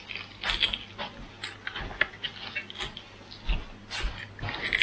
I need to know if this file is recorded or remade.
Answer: recorded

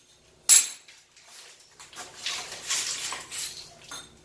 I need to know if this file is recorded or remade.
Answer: recorded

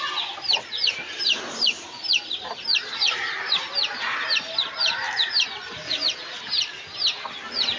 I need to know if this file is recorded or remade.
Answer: recorded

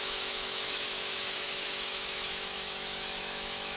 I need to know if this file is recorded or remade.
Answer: remade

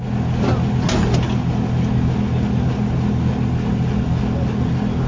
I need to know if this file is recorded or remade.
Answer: recorded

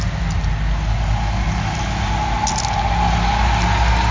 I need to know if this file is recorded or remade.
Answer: recorded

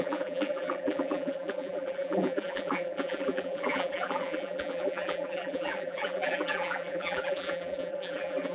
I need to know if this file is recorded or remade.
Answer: remade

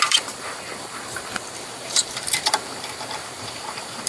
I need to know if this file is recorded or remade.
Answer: remade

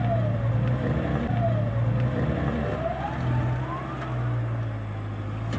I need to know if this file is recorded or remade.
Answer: recorded